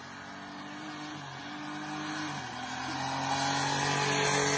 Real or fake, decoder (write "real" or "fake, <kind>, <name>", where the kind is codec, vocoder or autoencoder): real